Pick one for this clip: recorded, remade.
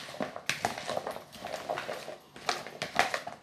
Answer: recorded